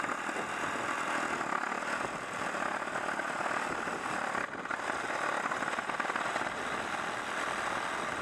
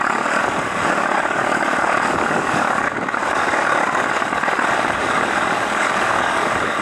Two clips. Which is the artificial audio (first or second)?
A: second